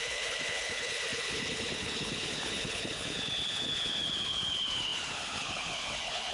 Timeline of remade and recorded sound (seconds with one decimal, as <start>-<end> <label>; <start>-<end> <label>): 0.0-6.3 remade